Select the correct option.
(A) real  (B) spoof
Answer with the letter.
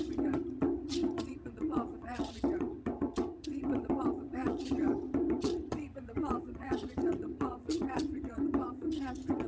B